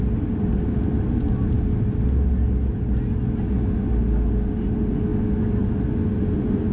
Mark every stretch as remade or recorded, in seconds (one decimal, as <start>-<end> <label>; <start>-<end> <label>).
0.0-6.7 recorded